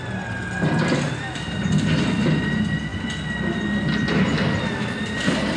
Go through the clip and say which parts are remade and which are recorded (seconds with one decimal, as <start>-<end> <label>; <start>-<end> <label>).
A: 0.0-5.6 recorded